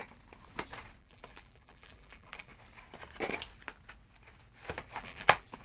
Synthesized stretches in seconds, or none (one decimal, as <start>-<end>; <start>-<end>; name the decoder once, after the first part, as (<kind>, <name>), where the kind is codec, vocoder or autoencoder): 1.0-2.5 (vocoder, BigVGAN v2); 5.0-5.6